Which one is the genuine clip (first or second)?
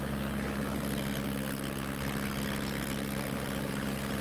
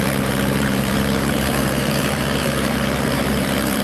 first